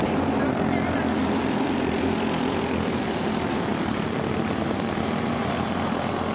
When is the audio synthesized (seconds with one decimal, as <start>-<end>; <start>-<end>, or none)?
1.2-3.0; 3.7-4.3